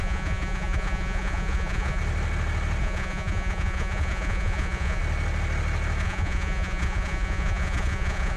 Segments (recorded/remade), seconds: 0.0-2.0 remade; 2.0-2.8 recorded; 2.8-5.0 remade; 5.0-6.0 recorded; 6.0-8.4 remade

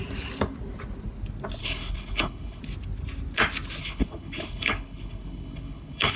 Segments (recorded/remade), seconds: 0.0-1.6 recorded; 1.6-2.6 remade; 2.6-3.8 recorded; 3.8-6.2 remade